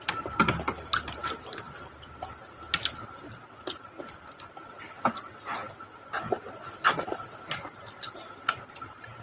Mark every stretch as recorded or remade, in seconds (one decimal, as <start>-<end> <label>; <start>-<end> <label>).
0.0-9.2 recorded